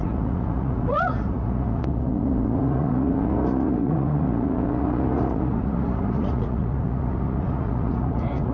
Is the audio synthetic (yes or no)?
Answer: yes